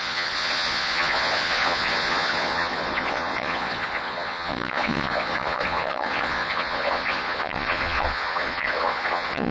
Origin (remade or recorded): remade